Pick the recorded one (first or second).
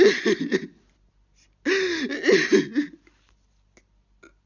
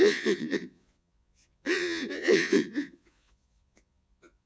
first